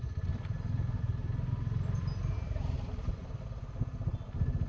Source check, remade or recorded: recorded